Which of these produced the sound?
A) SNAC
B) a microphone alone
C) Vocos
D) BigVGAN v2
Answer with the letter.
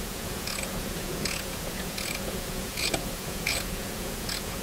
C